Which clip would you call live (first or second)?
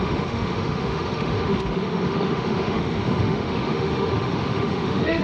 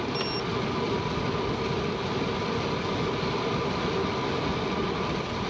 second